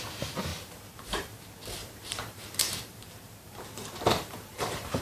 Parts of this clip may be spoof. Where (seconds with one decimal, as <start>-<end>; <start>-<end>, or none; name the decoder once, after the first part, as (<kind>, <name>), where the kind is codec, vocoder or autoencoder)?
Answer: 0.5-1.4 (vocoder, BigVGAN v2); 1.8-5.0